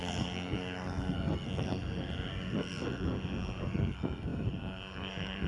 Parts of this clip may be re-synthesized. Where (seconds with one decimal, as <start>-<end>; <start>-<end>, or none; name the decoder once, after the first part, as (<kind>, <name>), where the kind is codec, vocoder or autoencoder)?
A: 0.0-5.5 (codec, SNAC)